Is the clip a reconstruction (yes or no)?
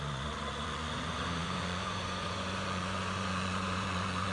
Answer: yes